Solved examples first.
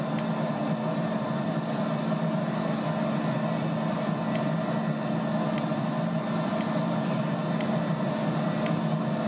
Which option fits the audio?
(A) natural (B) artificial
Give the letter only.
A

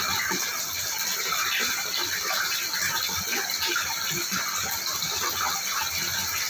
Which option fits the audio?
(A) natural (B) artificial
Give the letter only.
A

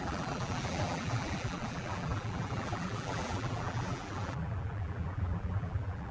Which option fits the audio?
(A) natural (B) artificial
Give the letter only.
B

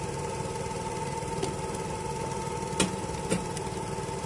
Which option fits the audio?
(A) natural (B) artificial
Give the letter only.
A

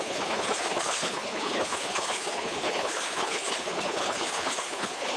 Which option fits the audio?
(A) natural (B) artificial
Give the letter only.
B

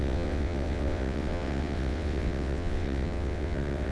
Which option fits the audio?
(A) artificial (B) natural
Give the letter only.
A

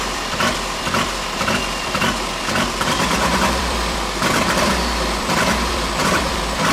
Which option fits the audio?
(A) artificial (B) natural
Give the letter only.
A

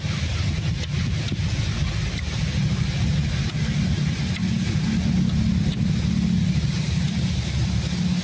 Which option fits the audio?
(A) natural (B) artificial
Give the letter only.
A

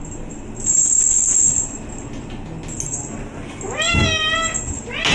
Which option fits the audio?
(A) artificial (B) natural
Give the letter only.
B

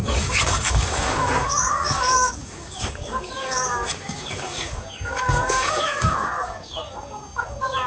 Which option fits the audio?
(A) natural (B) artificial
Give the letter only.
B